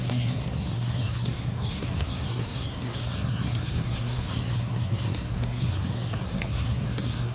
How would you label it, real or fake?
fake